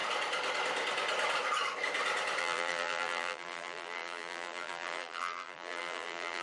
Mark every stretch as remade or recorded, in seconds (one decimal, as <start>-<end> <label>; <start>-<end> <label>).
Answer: 0.0-2.4 recorded; 2.4-6.4 remade